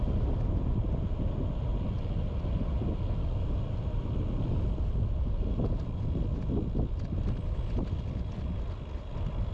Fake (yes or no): no